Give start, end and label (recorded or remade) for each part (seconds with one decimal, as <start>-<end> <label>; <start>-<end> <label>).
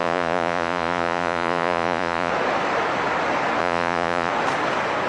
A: 0.0-2.3 remade; 2.3-3.6 recorded; 3.6-4.3 remade; 4.3-5.1 recorded